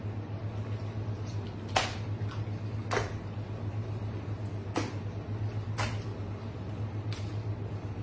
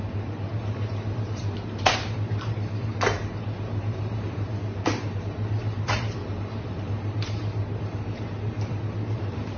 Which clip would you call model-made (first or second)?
second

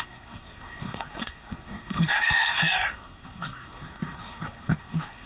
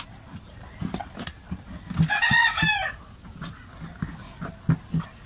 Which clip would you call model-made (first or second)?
first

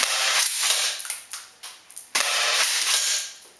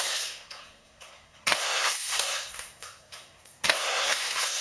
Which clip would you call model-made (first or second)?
second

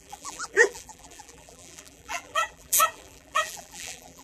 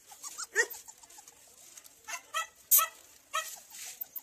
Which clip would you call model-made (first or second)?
first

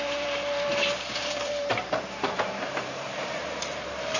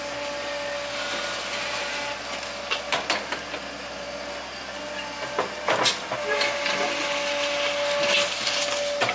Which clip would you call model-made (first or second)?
first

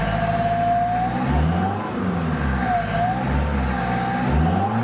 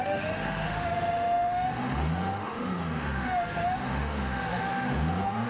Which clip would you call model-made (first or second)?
second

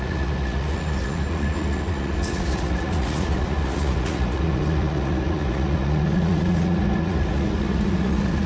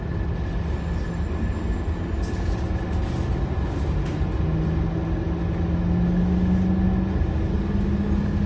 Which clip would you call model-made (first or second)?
first